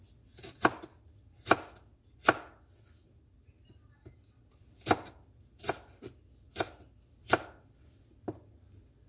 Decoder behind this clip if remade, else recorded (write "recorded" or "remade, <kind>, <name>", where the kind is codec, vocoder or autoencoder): recorded